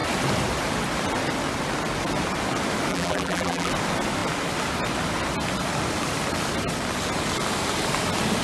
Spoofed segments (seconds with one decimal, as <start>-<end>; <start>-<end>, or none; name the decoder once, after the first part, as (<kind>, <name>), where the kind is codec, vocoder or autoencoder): 2.9-3.7 (vocoder, BigVGAN v2)